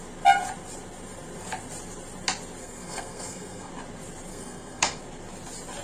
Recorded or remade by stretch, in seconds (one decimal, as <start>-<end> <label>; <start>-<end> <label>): 0.0-2.6 recorded; 2.6-3.7 remade; 3.7-4.3 recorded; 4.3-5.0 remade; 5.0-5.8 recorded